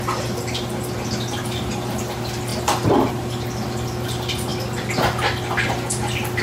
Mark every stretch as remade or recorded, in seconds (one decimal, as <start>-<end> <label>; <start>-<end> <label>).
0.0-6.4 recorded